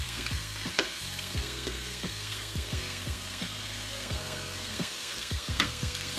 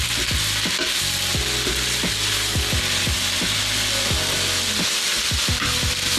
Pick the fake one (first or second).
first